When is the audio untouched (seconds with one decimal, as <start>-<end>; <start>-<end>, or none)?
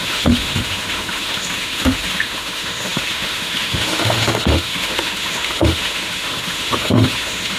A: none